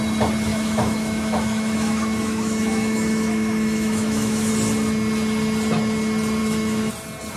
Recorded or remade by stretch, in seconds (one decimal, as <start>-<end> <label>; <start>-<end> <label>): 0.0-0.5 recorded; 0.5-4.5 remade; 4.5-6.4 recorded; 6.4-6.9 remade; 6.9-7.4 recorded